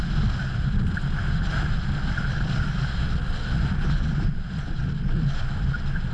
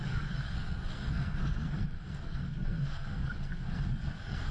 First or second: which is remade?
second